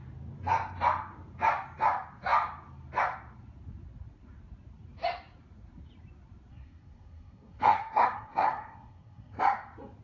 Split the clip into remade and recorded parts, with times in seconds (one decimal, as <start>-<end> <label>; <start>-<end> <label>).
0.0-6.5 recorded; 6.5-9.4 remade; 9.4-10.0 recorded